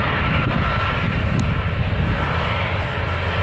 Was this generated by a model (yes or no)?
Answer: no